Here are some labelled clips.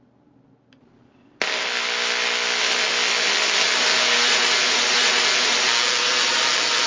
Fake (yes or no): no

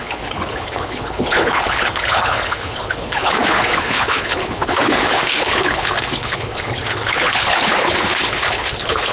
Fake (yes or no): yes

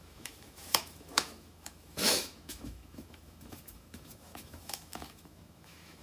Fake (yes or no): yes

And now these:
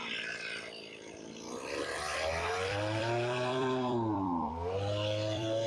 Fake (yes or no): yes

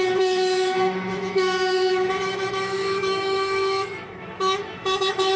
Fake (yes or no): yes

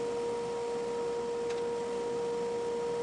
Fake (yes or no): no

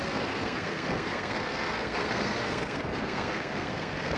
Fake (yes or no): yes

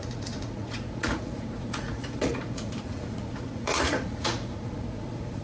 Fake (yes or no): yes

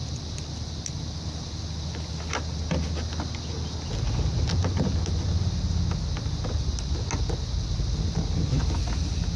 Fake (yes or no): no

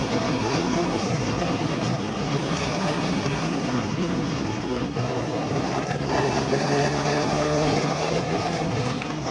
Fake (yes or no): yes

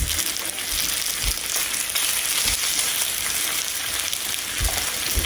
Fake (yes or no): no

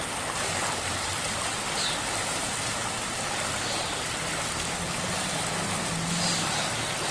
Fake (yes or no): no